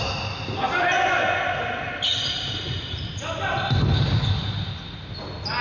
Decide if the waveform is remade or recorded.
recorded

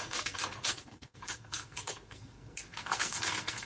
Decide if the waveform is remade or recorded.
remade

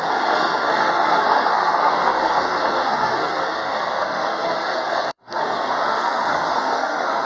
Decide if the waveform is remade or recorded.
remade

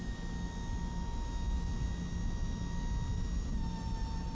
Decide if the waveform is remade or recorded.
recorded